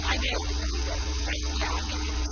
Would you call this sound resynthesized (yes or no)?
yes